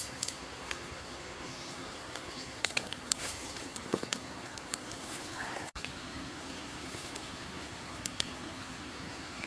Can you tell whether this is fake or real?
fake